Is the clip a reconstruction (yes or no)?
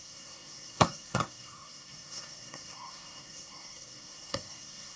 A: yes